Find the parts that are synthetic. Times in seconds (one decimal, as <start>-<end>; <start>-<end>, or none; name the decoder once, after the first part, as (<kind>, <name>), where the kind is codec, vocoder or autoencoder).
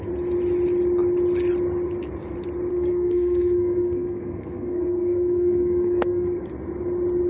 2.7-6.4 (codec, SNAC)